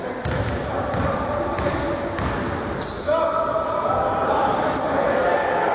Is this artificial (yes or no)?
yes